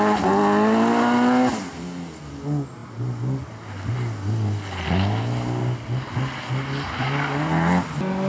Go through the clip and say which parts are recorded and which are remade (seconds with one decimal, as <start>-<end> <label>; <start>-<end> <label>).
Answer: 0.0-8.3 recorded